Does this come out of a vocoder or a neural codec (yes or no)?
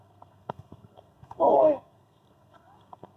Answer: yes